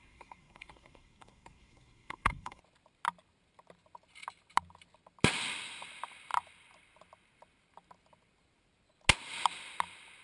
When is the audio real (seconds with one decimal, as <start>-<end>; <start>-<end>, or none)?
2.6-10.2